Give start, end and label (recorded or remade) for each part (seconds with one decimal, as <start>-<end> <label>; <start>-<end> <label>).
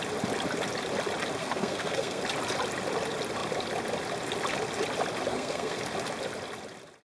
0.0-1.4 recorded; 1.4-2.2 remade; 2.2-5.3 recorded; 5.3-5.8 remade; 5.8-7.2 recorded